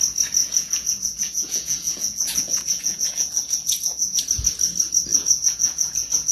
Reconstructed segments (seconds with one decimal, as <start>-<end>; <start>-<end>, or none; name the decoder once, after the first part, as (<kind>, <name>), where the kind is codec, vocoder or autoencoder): 0.4-4.2 (vocoder, Vocos); 5.1-6.3